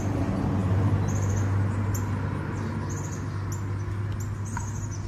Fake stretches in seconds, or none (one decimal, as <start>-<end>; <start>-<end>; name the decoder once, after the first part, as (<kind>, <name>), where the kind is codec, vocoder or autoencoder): none